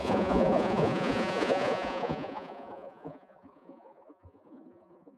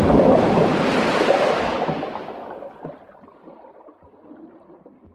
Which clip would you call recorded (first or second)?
second